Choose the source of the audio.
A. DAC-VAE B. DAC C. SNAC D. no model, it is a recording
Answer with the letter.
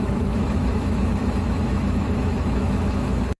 A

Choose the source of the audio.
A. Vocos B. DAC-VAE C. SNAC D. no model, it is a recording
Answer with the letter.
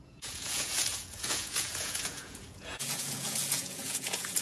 A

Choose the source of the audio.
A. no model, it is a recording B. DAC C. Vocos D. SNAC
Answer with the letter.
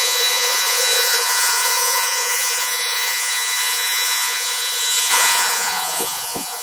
C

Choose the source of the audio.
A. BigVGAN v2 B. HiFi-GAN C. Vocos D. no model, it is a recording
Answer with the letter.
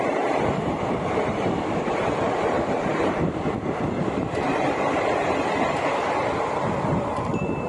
A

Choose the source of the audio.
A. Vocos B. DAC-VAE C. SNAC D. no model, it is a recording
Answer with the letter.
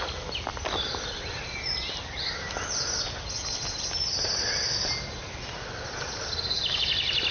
D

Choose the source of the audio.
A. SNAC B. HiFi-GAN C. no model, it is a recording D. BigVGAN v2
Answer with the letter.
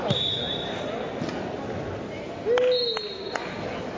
C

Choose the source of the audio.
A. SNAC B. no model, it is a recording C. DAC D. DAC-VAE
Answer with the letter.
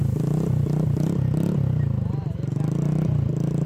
B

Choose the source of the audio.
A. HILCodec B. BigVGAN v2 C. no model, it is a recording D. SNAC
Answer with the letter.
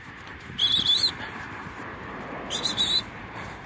B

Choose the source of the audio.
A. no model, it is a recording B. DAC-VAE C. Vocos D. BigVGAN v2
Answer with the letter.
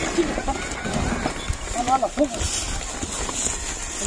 A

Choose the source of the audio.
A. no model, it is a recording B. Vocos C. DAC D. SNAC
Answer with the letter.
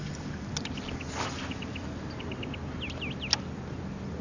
A